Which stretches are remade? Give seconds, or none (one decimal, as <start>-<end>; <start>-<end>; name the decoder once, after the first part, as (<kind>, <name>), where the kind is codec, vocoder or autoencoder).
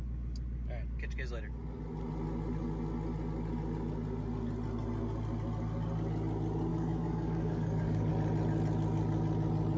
6.7-8.1 (codec, DAC)